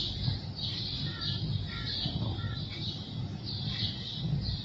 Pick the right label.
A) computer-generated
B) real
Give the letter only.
B